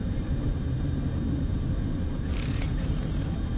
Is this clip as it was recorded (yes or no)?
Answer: no